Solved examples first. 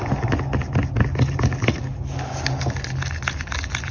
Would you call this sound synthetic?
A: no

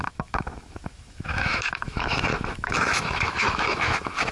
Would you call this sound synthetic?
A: yes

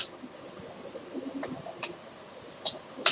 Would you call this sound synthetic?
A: yes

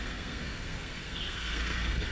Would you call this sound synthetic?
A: yes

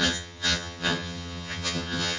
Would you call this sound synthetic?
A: yes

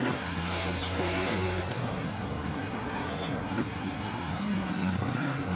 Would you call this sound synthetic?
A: yes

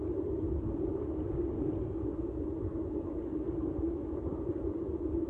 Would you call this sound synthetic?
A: no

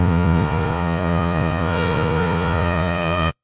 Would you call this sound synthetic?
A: yes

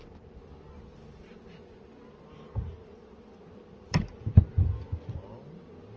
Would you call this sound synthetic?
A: no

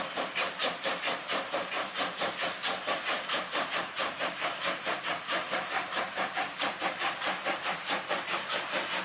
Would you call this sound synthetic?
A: yes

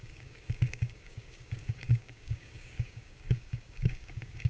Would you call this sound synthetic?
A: yes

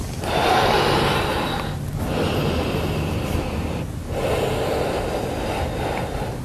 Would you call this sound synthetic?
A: no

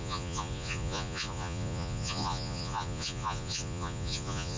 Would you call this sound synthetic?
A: yes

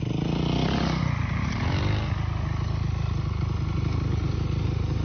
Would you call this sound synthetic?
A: no